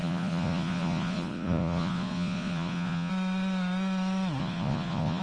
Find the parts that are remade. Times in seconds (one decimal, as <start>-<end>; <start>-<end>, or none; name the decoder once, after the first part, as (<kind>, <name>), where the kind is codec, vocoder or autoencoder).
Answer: 0.0-3.1 (vocoder, Vocos); 4.4-5.2